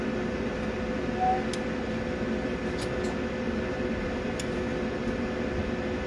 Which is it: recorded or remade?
recorded